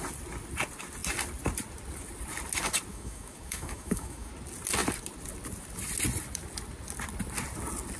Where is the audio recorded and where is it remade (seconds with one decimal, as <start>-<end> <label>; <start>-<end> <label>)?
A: 0.0-2.9 recorded; 2.9-4.3 remade; 4.3-8.0 recorded